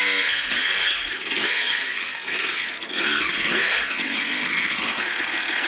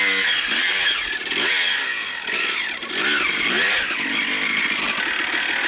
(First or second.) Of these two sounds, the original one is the second